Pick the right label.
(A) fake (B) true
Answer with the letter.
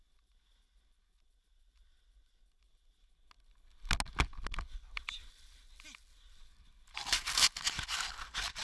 B